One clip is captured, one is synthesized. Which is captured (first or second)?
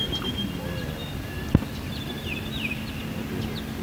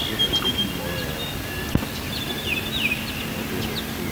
second